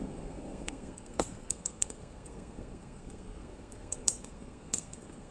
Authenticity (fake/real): fake